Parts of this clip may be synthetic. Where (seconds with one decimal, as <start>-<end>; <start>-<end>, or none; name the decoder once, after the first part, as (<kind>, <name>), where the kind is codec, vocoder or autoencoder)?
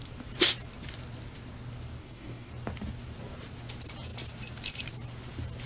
2.0-2.5 (codec, DAC)